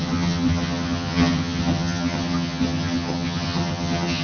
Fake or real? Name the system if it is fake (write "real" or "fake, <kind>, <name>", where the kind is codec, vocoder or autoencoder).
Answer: fake, vocoder, HiFi-GAN